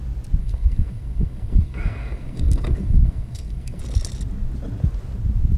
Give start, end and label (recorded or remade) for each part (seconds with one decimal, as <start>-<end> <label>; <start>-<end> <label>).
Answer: 0.0-0.4 recorded; 0.4-3.8 remade; 3.8-5.6 recorded